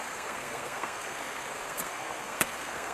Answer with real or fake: fake